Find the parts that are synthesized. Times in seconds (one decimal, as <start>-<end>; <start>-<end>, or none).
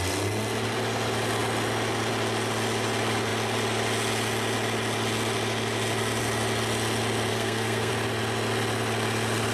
7.3-7.9